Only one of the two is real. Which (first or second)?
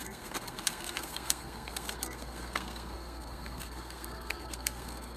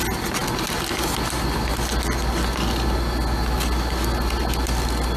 second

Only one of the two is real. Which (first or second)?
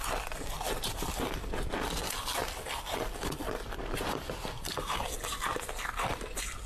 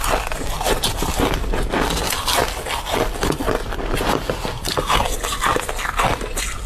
second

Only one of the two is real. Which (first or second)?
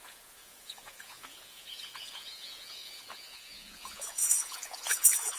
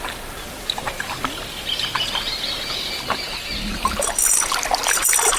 second